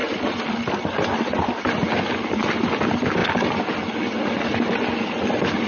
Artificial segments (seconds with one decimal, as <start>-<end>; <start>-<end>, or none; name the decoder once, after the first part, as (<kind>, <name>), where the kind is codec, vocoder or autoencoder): none